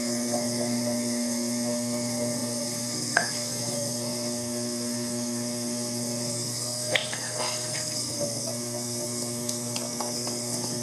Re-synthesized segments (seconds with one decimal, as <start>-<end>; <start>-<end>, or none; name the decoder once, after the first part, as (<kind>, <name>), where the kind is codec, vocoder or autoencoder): 0.0-10.8 (codec, SNAC)

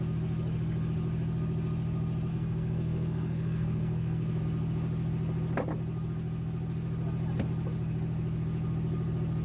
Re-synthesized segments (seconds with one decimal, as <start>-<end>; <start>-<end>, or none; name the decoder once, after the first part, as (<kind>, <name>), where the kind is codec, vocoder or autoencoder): 2.3-4.4 (codec, SNAC)